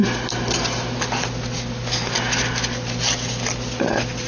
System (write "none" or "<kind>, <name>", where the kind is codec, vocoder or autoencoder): none